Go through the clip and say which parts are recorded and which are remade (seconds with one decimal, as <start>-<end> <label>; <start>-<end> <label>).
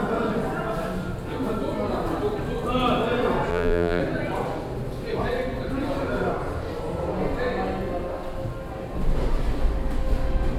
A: 0.0-3.5 recorded; 3.5-4.0 remade; 4.0-10.6 recorded